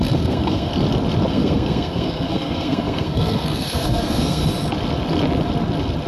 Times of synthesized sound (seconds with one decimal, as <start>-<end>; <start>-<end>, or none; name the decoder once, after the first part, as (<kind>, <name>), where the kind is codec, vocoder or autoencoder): 0.0-0.7 (codec, SNAC); 1.3-4.4